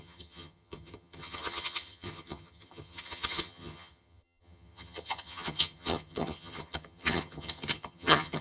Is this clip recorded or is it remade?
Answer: remade